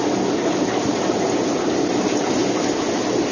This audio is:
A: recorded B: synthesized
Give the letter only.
A